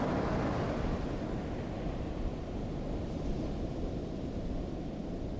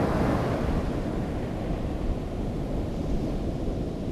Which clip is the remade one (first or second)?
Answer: second